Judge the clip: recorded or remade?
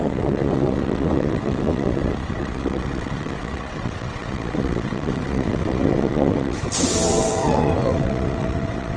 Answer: remade